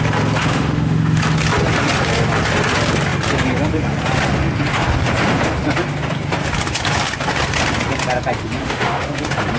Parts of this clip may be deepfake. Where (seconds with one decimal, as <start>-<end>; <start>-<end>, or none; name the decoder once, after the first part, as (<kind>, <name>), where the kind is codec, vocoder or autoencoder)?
0.5-1.2 (autoencoder, DAC-VAE); 8.6-9.2